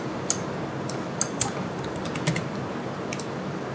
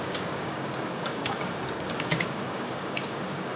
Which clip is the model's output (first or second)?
second